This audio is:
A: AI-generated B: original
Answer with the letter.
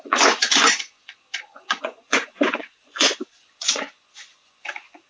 A